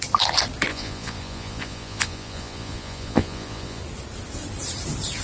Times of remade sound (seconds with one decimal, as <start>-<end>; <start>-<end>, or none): 0.7-3.8